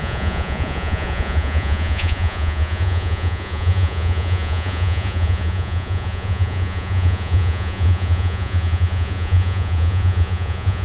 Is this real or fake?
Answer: fake